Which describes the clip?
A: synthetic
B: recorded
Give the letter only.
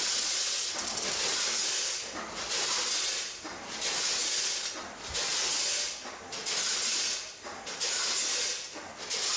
B